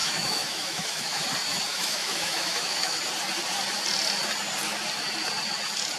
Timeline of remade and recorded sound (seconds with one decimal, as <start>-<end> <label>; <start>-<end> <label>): 0.0-1.2 remade; 1.2-1.7 recorded; 1.7-3.0 remade; 3.0-6.0 recorded